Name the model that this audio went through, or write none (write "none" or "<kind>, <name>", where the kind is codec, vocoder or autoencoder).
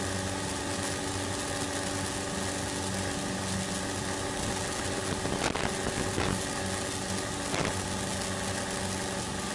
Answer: none